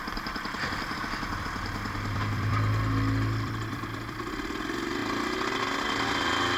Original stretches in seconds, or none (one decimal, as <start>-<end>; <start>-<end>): 5.0-6.6